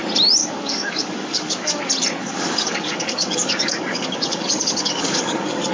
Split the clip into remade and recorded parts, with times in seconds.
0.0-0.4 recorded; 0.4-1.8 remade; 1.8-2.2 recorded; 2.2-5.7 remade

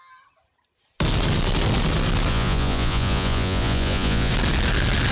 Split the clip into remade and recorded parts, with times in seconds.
0.0-2.3 recorded; 2.3-4.3 remade; 4.3-5.1 recorded

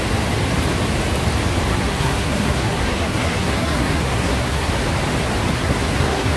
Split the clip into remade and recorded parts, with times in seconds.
0.0-1.7 recorded; 1.7-4.7 remade; 4.7-5.5 recorded; 5.5-6.4 remade

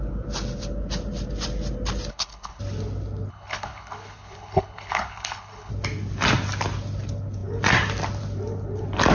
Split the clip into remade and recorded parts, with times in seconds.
0.0-2.1 recorded; 2.1-2.6 remade; 2.6-3.3 recorded; 3.3-5.7 remade; 5.7-9.1 recorded

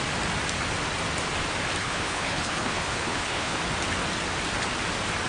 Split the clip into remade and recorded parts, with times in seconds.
0.0-1.8 recorded; 1.8-3.6 remade; 3.6-5.3 recorded